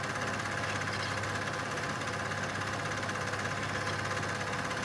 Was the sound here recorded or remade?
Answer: recorded